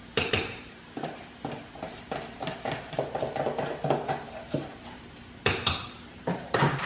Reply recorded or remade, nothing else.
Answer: remade